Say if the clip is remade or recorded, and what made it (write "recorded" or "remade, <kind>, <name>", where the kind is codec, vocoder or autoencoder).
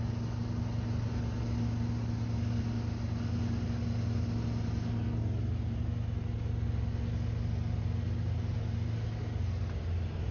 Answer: recorded